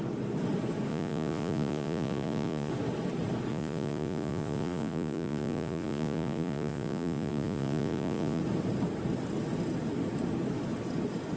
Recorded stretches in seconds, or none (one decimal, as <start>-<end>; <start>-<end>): 0.0-0.9; 2.7-3.5; 8.4-11.4